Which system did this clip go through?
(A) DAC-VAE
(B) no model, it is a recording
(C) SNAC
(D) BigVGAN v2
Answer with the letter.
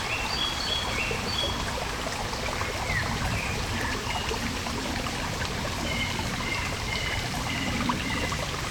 B